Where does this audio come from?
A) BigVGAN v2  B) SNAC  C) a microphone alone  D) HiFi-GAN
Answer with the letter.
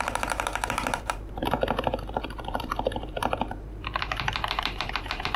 A